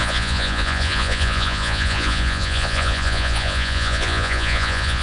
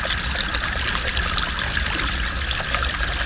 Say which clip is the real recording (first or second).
second